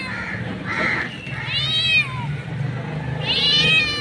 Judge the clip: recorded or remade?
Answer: recorded